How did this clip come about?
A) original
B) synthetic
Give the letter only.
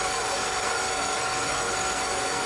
B